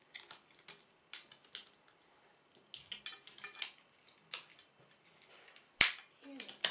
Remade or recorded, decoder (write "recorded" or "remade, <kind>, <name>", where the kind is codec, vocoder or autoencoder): recorded